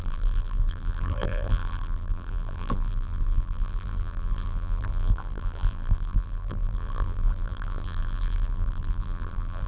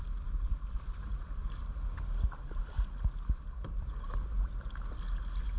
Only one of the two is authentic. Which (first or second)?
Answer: second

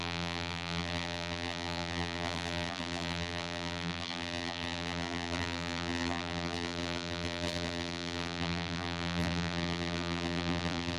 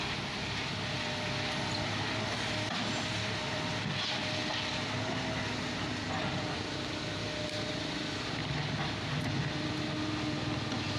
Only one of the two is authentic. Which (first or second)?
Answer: second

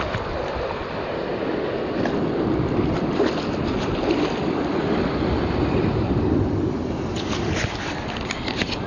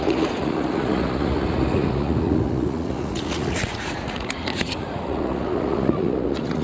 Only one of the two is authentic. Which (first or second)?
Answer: first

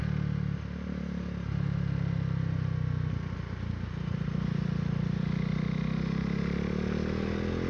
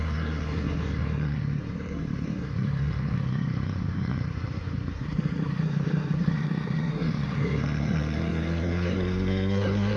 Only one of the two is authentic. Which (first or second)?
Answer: first